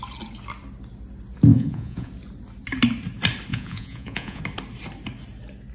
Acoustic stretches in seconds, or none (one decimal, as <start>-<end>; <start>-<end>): 0.0-1.5; 2.1-3.5; 4.4-5.7